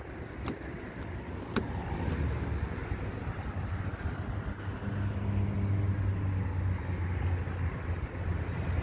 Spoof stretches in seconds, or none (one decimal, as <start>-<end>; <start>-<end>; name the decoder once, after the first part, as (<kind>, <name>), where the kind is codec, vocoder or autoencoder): none